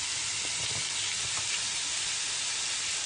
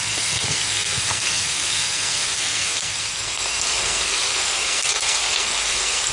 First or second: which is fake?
second